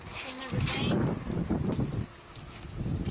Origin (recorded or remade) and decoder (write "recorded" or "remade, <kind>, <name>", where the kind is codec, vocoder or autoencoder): recorded